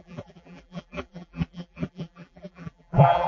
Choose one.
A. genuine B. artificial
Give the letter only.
B